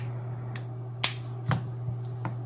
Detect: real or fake real